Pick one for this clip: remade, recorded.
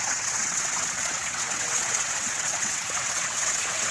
remade